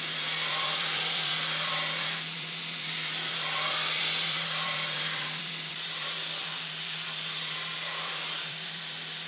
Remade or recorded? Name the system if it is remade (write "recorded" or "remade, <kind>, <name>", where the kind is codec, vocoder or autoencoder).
remade, vocoder, BigVGAN v2